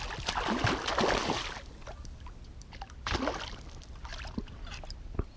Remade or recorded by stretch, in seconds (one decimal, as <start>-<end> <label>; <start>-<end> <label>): 0.0-4.1 recorded; 4.1-5.4 remade

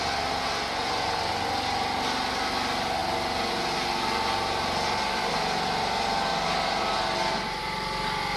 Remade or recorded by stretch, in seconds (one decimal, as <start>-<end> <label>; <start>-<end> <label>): 0.0-8.4 recorded

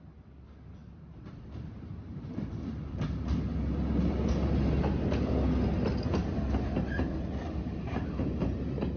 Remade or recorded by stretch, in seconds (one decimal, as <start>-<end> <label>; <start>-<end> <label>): 0.0-0.8 recorded; 0.8-2.6 remade; 2.6-9.0 recorded

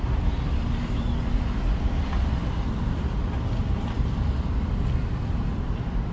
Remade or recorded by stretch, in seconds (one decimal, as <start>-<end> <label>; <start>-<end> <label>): 0.0-2.4 recorded; 2.4-6.1 remade